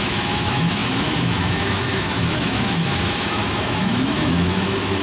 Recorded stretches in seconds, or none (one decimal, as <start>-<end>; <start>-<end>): none